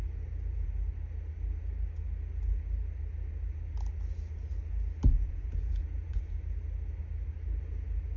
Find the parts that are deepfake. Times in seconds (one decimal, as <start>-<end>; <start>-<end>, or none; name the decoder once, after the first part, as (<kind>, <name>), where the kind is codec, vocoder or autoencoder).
5.1-6.2 (vocoder, Vocos)